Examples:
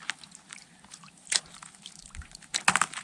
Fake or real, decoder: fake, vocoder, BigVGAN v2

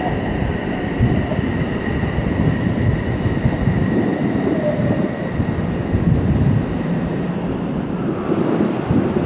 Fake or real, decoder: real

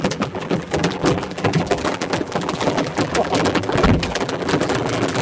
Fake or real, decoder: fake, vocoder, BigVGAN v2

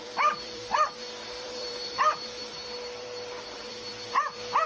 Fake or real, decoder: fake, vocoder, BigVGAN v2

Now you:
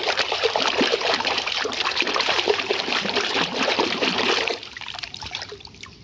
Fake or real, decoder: fake, vocoder, BigVGAN v2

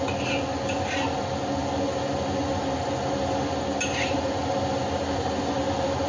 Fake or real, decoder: real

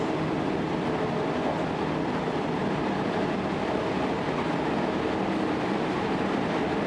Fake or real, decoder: fake, vocoder, BigVGAN v2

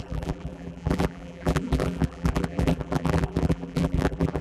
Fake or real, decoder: fake, vocoder, BigVGAN v2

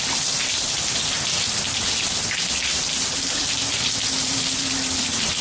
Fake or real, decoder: fake, vocoder, BigVGAN v2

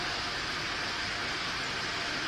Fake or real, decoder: real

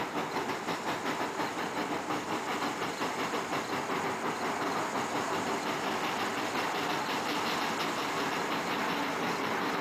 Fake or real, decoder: real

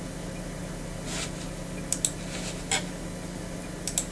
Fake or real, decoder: real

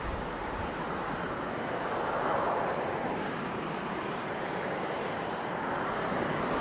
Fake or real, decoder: fake, vocoder, BigVGAN v2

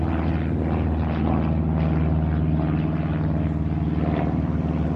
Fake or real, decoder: real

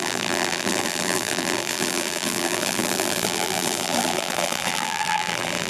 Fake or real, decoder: fake, vocoder, BigVGAN v2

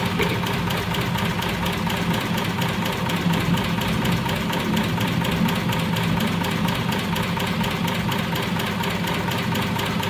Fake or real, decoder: real